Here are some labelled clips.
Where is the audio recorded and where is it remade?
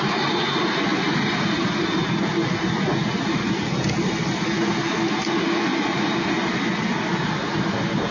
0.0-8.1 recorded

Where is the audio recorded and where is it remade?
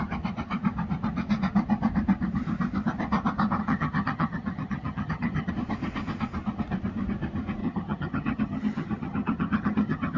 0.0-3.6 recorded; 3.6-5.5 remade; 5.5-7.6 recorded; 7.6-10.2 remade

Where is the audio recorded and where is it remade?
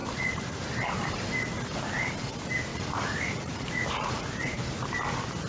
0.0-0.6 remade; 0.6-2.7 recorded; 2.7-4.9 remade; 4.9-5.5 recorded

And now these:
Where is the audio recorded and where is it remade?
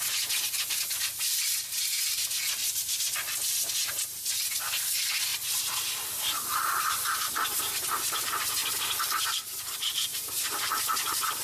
0.0-11.4 recorded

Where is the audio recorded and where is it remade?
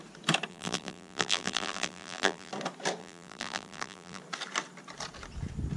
0.0-0.5 recorded; 0.5-2.5 remade; 2.5-3.0 recorded; 3.0-4.2 remade; 4.2-5.8 recorded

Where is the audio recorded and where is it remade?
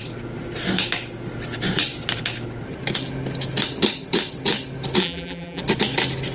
0.0-5.0 recorded; 5.0-5.6 remade; 5.6-6.3 recorded